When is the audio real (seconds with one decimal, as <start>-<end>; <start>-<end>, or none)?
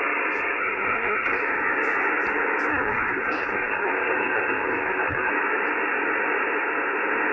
0.0-0.6; 1.4-2.7; 5.3-7.3